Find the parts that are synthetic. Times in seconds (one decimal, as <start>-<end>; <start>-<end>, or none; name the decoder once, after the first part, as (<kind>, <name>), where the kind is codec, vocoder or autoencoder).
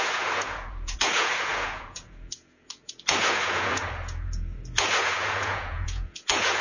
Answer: 0.0-6.6 (vocoder, Vocos)